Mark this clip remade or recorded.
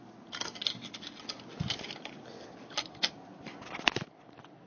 recorded